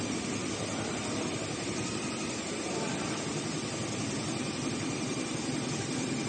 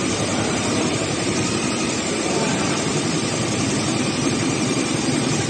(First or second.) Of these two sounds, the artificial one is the second